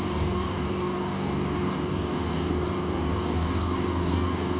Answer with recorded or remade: remade